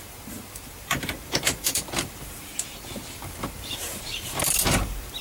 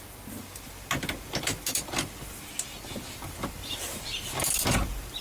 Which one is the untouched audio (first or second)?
second